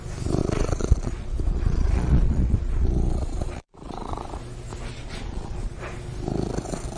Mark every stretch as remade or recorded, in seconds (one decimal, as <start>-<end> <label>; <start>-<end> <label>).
0.0-0.4 recorded; 0.4-4.4 remade; 4.4-4.9 recorded; 4.9-5.8 remade; 5.8-7.0 recorded